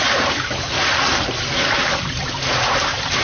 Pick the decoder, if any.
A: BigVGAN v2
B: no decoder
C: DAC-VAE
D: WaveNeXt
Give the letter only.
A